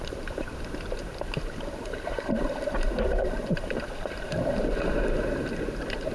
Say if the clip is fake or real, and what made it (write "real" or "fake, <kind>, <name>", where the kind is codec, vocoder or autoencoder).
fake, vocoder, BigVGAN v2